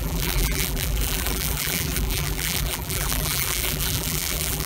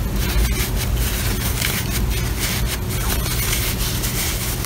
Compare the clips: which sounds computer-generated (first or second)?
first